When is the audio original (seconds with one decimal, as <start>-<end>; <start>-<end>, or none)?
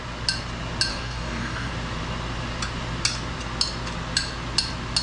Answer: 0.0-0.9; 1.7-5.0